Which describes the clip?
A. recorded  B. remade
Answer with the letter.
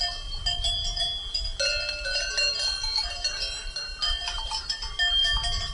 A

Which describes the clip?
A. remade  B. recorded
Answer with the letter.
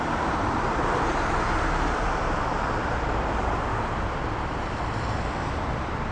A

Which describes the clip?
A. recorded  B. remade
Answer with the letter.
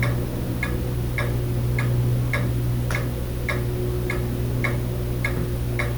A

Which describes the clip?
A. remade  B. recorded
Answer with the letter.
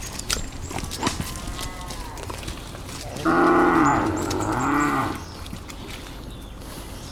B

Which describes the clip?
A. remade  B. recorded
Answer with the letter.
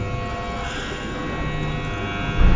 B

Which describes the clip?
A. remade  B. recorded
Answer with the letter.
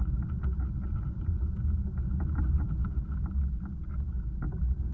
B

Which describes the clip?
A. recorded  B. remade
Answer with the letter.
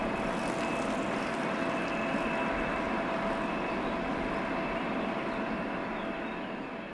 A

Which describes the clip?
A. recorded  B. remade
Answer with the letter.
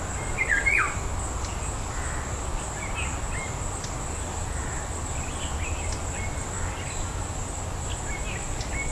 A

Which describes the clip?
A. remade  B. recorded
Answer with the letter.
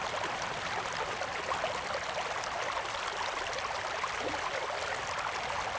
B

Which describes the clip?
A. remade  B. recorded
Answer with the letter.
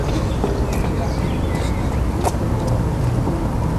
B